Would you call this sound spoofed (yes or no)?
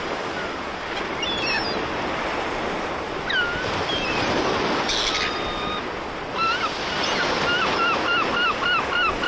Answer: no